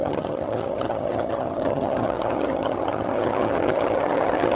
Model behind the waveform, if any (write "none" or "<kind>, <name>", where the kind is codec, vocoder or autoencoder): vocoder, HiFi-GAN